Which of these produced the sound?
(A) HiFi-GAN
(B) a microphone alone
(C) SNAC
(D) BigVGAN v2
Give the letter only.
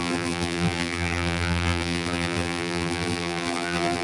D